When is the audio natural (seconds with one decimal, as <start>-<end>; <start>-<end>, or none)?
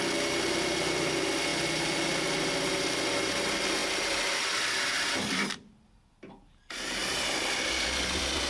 0.0-7.0; 7.6-8.5